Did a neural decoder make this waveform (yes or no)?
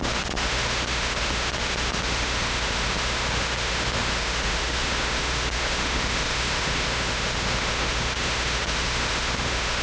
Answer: yes